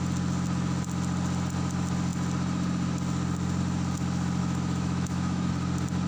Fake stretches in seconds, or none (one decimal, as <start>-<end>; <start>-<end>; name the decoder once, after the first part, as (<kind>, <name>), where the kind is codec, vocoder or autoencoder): 4.4-5.5 (autoencoder, DAC-VAE)